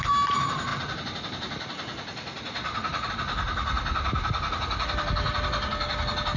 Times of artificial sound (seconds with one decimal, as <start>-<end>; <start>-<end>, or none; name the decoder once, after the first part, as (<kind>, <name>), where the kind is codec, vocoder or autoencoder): none